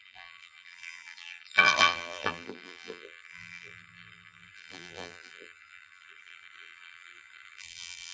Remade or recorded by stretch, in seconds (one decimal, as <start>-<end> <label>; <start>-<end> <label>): 0.0-8.1 remade